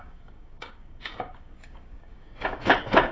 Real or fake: fake